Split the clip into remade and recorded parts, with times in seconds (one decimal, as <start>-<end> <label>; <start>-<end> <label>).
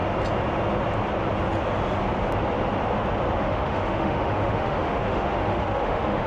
0.0-3.4 recorded; 3.4-6.3 remade